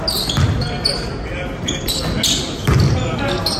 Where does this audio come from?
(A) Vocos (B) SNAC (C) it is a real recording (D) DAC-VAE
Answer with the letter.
C